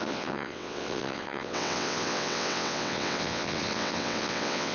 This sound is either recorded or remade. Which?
remade